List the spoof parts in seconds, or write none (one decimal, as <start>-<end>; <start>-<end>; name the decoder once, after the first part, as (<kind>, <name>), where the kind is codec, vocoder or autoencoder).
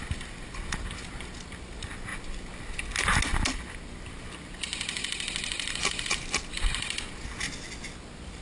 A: none